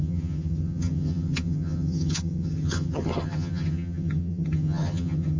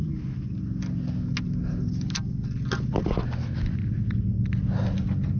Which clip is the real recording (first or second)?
second